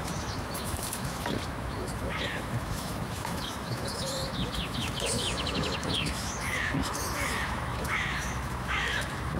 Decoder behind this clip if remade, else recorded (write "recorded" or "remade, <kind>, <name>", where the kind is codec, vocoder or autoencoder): remade, autoencoder, DAC-VAE